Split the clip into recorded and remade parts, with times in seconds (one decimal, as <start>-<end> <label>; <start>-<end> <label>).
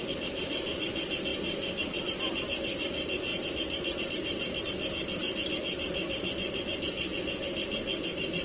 0.0-0.7 remade; 0.7-8.4 recorded